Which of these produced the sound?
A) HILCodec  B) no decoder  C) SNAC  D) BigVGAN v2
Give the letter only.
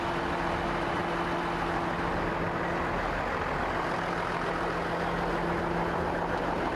B